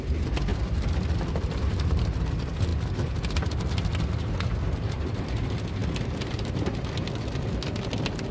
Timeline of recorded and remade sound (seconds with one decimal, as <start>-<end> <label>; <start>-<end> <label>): 0.0-0.5 recorded; 0.5-2.2 remade; 2.2-5.8 recorded; 5.8-6.5 remade; 6.5-8.3 recorded